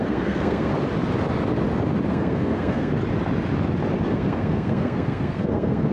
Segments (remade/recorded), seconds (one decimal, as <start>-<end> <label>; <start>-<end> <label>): 0.0-0.7 remade; 0.7-2.1 recorded; 2.1-2.9 remade; 2.9-4.1 recorded; 4.1-5.9 remade